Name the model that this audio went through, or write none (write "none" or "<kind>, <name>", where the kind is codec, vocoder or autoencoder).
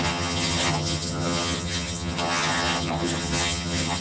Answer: vocoder, HiFi-GAN